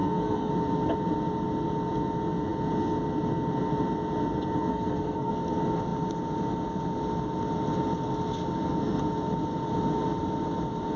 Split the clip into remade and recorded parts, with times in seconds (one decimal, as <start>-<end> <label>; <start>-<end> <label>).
0.0-0.5 remade; 0.5-4.7 recorded; 4.7-5.3 remade; 5.3-11.0 recorded